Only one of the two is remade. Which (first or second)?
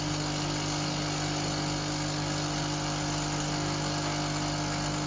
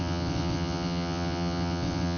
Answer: second